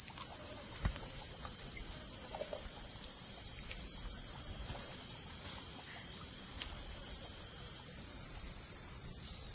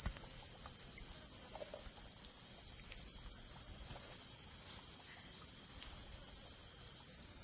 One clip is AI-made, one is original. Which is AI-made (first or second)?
first